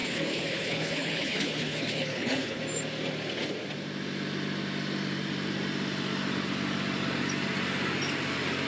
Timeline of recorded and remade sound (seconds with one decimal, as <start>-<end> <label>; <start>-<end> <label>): 0.0-2.6 remade; 2.6-8.7 recorded